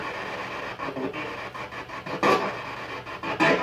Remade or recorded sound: recorded